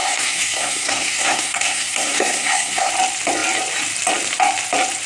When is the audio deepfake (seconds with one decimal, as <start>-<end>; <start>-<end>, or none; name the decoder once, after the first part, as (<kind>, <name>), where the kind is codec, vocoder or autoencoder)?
0.0-2.9 (codec, SNAC)